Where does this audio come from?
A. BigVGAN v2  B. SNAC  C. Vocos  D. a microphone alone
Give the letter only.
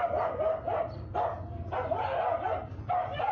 D